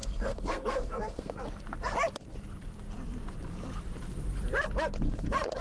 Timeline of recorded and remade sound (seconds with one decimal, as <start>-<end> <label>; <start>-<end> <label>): 0.0-1.4 remade; 1.4-5.6 recorded